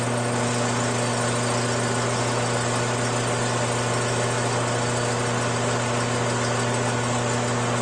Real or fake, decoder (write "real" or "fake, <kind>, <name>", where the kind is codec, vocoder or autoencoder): real